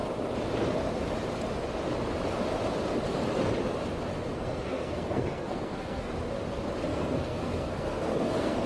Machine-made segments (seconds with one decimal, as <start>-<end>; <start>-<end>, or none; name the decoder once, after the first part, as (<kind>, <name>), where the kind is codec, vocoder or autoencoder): 4.1-6.1 (codec, SNAC); 6.9-8.7